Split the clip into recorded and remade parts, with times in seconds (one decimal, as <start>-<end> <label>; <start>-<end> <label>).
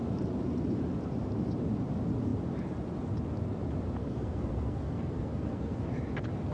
0.0-4.0 recorded; 4.0-5.9 remade; 5.9-6.5 recorded